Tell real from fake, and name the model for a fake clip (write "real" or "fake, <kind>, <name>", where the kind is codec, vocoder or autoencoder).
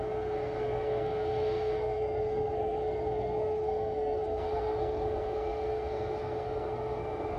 fake, codec, SNAC